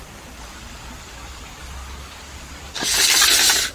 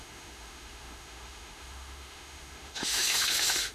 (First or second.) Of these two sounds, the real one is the first